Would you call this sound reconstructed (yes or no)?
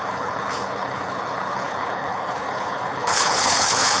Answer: yes